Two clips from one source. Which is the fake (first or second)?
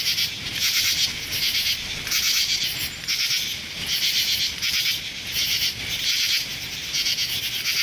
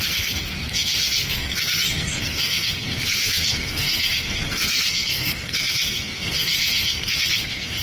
second